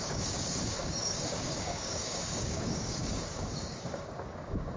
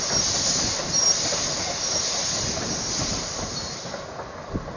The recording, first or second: second